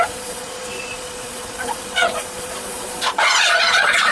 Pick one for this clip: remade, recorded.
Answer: remade